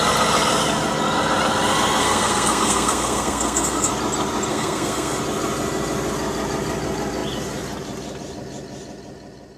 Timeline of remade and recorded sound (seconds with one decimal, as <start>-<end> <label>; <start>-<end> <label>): 0.0-2.0 recorded; 2.0-3.9 remade; 3.9-4.5 recorded; 4.5-5.2 remade; 5.2-9.6 recorded